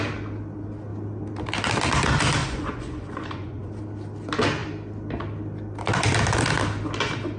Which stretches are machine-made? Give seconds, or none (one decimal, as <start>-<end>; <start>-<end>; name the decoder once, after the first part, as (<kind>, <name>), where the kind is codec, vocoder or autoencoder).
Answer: 2.4-3.7 (vocoder, Vocos)